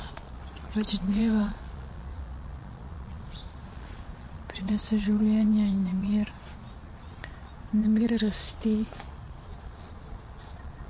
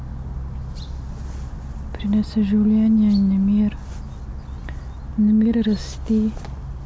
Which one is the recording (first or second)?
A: second